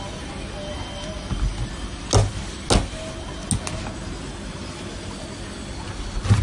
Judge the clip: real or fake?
real